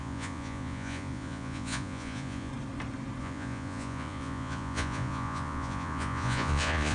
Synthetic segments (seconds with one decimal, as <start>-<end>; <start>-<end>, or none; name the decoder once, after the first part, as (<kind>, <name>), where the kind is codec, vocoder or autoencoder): 0.0-2.5 (vocoder, Vocos); 3.2-6.9